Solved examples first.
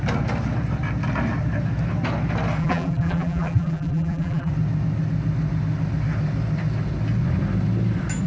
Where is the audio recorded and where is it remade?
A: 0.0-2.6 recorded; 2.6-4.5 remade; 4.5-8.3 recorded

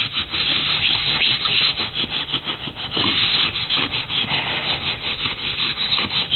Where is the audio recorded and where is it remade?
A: 0.0-6.4 remade

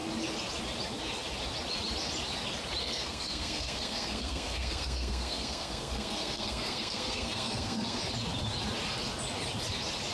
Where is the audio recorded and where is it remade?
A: 0.0-2.8 recorded; 2.8-8.0 remade; 8.0-10.1 recorded

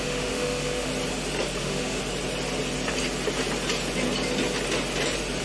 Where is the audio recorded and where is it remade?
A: 0.0-0.9 remade; 0.9-1.6 recorded; 1.6-2.0 remade; 2.0-5.4 recorded